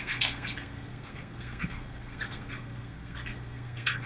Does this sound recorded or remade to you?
remade